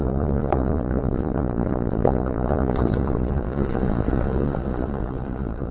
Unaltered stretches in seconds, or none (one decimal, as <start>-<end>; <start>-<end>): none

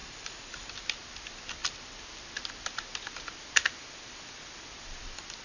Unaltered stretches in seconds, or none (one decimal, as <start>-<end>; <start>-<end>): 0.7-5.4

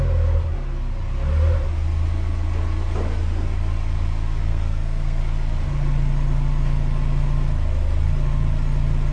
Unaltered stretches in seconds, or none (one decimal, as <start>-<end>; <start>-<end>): 0.0-4.5; 5.2-9.1